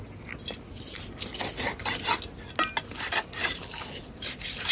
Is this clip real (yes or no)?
yes